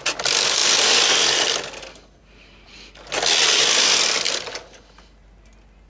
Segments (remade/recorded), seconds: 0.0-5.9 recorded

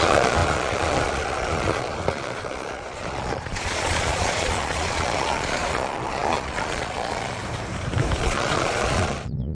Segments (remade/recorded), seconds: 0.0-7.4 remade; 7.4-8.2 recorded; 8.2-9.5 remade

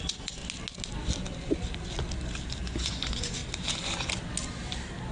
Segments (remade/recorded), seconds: 0.0-0.4 remade; 0.4-2.6 recorded; 2.6-3.4 remade; 3.4-5.1 recorded